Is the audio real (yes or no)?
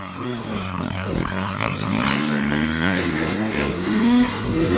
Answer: no